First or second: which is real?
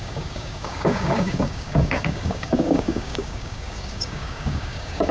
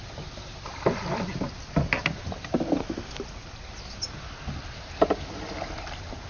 second